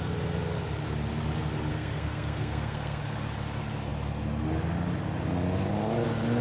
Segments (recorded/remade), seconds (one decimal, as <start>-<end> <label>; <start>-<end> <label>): 0.0-1.7 recorded; 1.7-3.0 remade; 3.0-6.4 recorded